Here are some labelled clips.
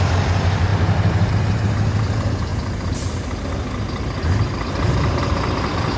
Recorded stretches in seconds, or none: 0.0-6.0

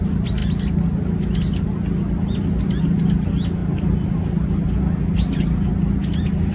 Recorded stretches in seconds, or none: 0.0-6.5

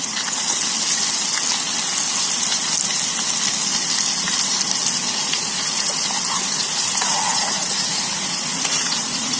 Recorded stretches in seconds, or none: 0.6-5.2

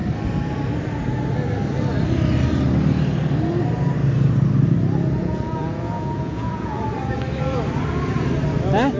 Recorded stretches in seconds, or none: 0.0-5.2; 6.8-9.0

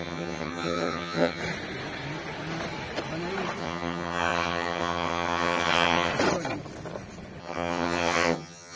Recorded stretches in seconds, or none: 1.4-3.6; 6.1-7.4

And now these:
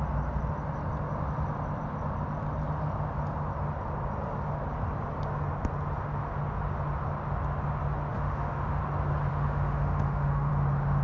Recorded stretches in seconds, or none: 0.0-8.1; 8.8-9.3; 10.5-11.0

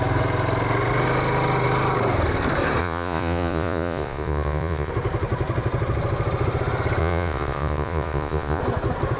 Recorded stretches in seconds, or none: 0.0-2.8; 4.9-7.0; 8.6-9.2